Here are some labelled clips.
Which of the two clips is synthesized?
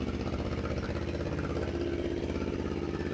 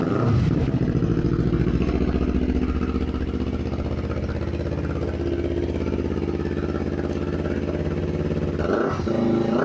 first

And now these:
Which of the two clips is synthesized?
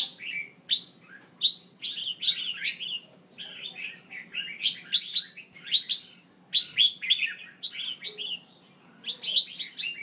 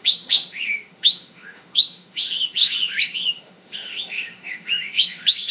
second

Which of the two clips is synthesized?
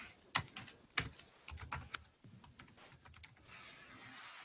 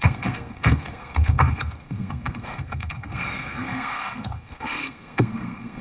second